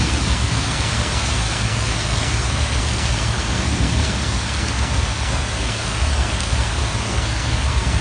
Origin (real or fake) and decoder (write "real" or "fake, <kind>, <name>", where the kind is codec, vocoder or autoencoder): fake, codec, SNAC